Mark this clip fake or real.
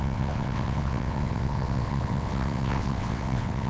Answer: fake